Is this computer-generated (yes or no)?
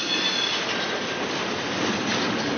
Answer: no